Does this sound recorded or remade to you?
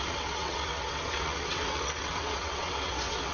remade